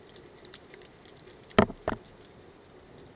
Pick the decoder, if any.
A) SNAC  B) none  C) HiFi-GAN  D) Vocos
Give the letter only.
B